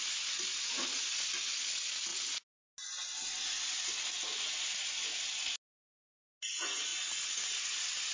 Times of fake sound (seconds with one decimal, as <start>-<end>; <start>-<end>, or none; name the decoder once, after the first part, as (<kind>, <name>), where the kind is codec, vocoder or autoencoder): none